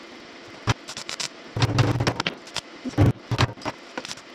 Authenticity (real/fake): real